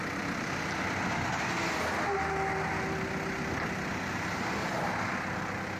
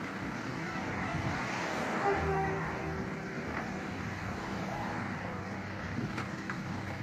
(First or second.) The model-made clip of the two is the second